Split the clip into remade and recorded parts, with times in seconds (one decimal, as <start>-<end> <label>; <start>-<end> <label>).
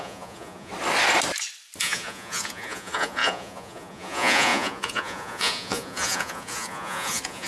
0.0-0.7 remade; 0.7-1.8 recorded; 1.8-7.5 remade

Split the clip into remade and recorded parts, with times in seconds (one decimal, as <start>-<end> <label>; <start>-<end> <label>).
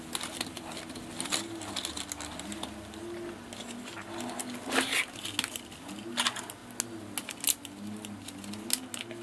0.0-9.2 recorded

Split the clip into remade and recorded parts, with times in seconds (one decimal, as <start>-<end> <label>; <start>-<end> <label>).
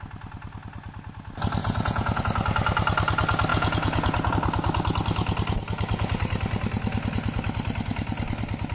0.0-1.6 recorded; 1.6-2.2 remade; 2.2-3.5 recorded; 3.5-4.3 remade; 4.3-8.7 recorded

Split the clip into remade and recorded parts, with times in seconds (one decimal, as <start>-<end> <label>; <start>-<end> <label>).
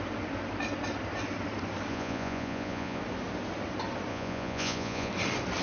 0.0-1.9 recorded; 1.9-3.0 remade; 3.0-4.1 recorded; 4.1-5.1 remade; 5.1-5.6 recorded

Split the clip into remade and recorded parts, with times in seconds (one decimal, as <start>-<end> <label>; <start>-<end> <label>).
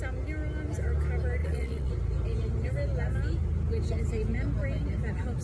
0.0-1.4 recorded; 1.4-1.9 remade; 1.9-5.4 recorded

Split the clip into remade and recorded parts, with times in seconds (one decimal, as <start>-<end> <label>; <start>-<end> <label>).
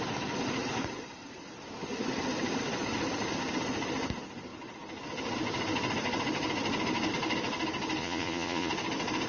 0.0-8.0 recorded; 8.0-8.7 remade; 8.7-9.3 recorded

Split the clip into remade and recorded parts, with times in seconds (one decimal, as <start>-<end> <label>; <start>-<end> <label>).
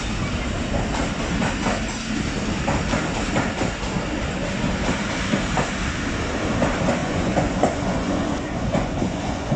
0.0-7.0 recorded; 7.0-9.6 remade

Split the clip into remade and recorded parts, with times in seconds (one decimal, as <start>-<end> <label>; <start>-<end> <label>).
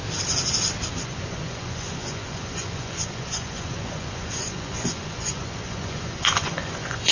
0.0-0.9 recorded; 0.9-7.1 remade